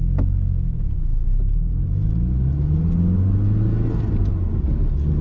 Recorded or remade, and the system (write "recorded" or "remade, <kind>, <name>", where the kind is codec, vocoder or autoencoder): recorded